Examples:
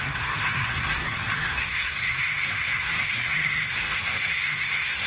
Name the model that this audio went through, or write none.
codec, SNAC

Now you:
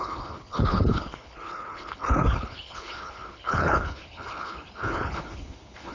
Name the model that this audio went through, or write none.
codec, HILCodec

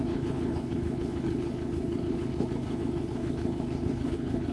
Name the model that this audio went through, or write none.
codec, HILCodec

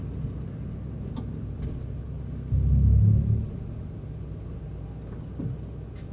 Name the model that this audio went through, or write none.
none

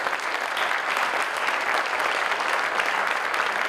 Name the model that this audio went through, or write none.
none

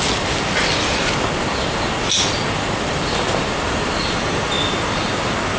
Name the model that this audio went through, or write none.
none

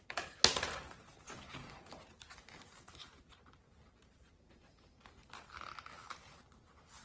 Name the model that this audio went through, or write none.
vocoder, BigVGAN v2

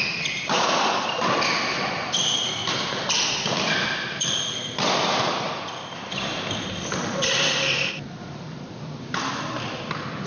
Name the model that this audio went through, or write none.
vocoder, BigVGAN v2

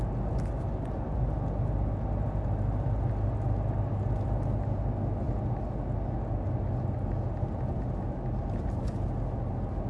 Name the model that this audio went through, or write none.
none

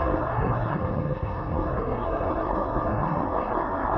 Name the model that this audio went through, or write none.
codec, SNAC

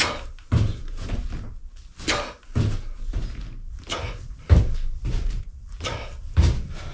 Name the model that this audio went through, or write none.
none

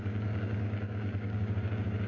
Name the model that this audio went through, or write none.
codec, DAC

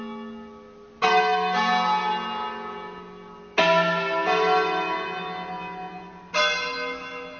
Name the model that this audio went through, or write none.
none